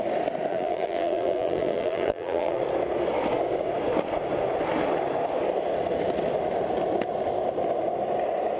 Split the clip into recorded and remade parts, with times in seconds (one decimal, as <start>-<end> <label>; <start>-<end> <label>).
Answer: 0.0-0.5 recorded; 0.5-2.6 remade; 2.6-8.6 recorded